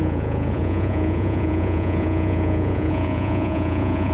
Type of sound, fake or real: fake